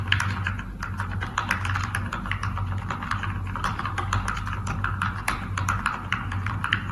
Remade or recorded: recorded